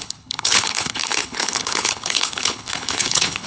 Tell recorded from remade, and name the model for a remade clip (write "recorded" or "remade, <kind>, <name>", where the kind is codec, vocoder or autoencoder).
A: remade, codec, HILCodec